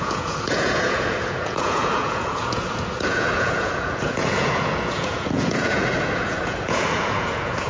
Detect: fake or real fake